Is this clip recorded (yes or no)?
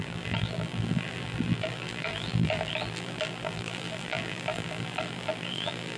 no